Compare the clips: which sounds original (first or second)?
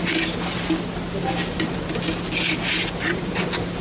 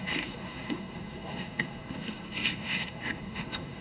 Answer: first